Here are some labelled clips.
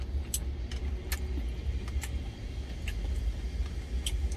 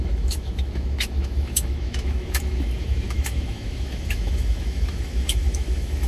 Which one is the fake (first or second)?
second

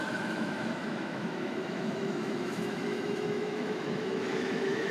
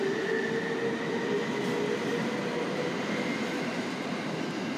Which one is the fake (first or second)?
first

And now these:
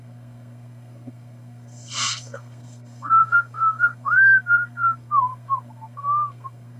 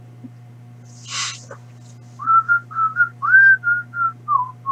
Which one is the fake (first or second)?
first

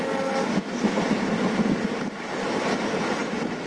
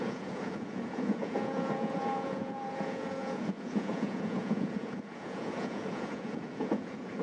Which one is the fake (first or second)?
second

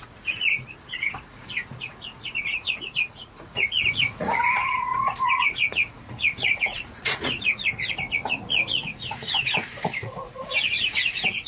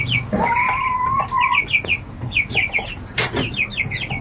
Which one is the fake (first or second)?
first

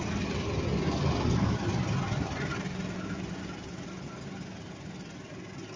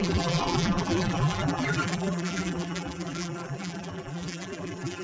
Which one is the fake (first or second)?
second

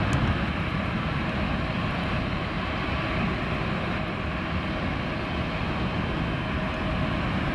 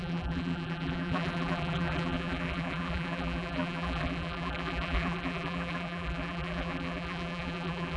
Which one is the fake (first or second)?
second